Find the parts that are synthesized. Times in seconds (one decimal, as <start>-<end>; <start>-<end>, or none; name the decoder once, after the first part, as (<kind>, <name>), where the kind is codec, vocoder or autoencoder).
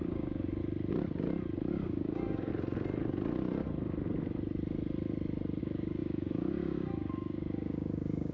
0.0-0.6 (codec, DAC); 1.7-2.5; 5.6-8.3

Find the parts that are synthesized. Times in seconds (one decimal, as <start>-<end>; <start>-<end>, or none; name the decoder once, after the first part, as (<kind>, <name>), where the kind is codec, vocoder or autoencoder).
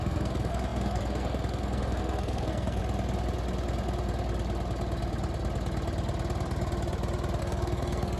0.0-2.8 (codec, SNAC); 7.4-8.2